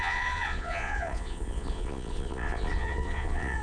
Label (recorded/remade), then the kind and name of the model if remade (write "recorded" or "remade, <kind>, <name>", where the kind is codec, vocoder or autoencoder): remade, vocoder, Vocos